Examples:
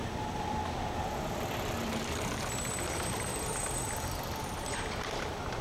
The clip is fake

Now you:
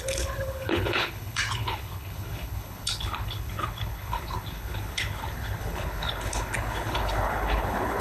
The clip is fake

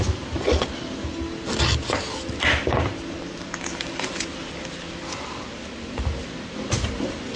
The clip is real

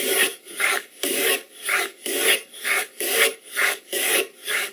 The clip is fake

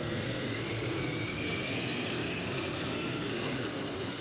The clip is fake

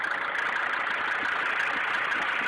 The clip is real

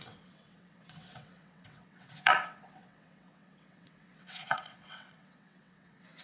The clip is fake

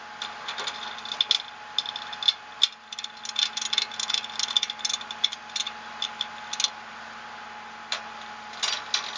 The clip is real